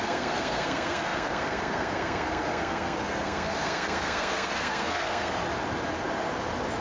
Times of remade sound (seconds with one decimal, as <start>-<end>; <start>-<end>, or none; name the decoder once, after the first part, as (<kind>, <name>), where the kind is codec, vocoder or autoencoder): 0.0-5.4 (codec, SNAC)